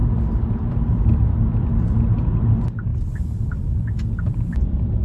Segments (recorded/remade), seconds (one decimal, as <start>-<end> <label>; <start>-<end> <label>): 0.0-2.9 recorded; 2.9-4.0 remade; 4.0-5.0 recorded